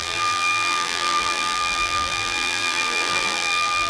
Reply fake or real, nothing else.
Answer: fake